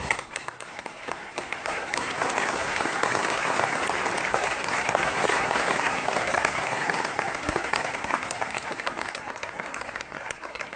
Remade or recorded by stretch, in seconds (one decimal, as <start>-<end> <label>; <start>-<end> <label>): 0.0-3.8 remade; 3.8-4.3 recorded; 4.3-10.8 remade